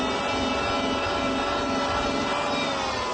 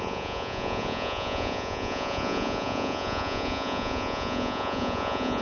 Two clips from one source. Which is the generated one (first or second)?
second